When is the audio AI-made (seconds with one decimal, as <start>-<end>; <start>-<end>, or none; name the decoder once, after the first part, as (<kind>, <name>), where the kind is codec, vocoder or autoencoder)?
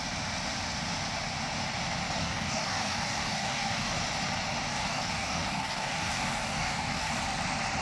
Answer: 2.2-4.0 (codec, DAC); 4.7-7.2